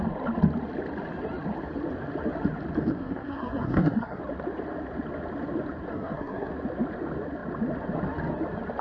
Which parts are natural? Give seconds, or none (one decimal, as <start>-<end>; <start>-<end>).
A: 0.0-2.9; 4.2-5.9; 6.5-8.8